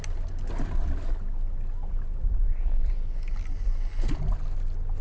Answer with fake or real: real